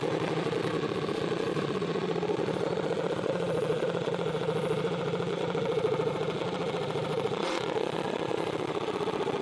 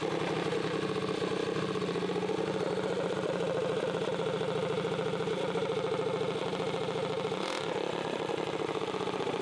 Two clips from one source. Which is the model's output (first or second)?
first